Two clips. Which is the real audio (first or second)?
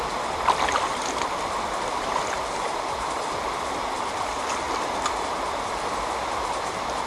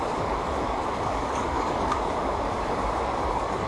first